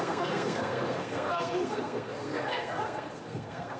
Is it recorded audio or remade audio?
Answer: remade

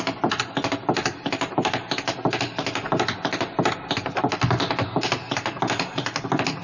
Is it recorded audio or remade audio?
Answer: recorded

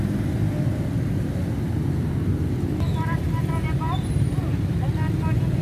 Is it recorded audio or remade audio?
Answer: recorded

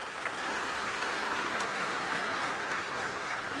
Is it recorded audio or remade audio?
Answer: remade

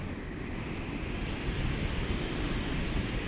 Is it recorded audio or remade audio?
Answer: recorded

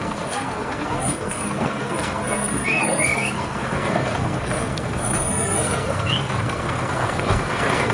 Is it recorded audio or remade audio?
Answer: remade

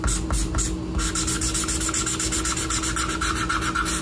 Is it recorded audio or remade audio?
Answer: recorded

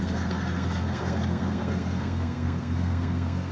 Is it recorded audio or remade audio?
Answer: remade